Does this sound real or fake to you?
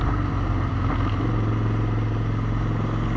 real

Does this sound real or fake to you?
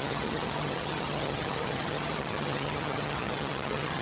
fake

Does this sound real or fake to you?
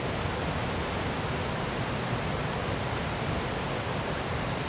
real